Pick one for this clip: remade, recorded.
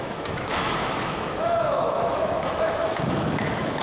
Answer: remade